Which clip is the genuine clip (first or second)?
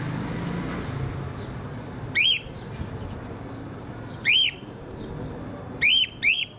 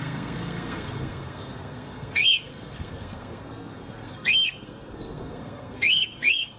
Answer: first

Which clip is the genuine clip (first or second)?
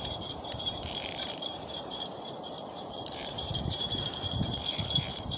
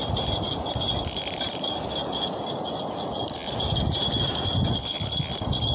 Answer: second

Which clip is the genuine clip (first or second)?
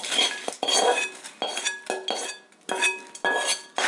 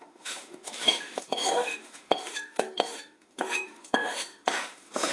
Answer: first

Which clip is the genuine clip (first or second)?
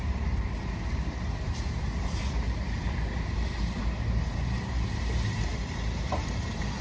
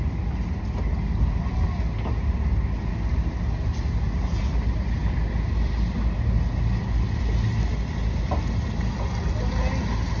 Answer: second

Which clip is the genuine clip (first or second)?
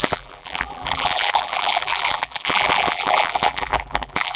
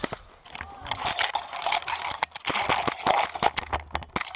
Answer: second